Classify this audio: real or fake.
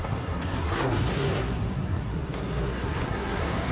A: fake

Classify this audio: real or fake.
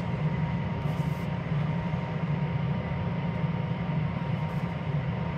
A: fake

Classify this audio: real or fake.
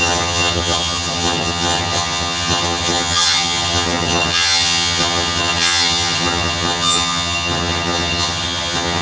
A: fake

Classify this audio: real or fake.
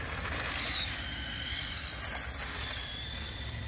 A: fake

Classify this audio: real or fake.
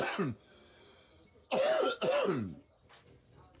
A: real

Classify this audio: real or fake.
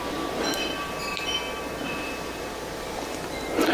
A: fake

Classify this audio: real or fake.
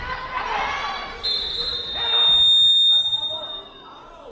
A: real